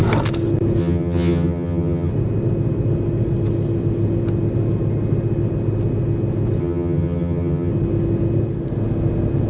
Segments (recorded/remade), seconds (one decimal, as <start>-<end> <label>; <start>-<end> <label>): 0.0-0.8 recorded; 0.8-2.1 remade; 2.1-6.6 recorded; 6.6-7.7 remade; 7.7-9.5 recorded